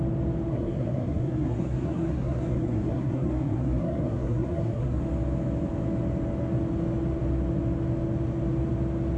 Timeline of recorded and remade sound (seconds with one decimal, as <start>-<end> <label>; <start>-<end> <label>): 0.0-0.5 recorded; 0.5-5.0 remade; 5.0-9.2 recorded